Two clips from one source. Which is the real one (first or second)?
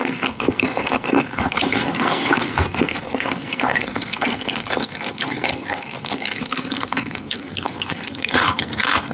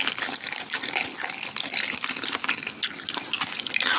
second